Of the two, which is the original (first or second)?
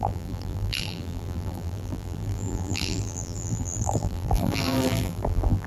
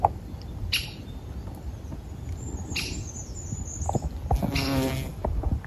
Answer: second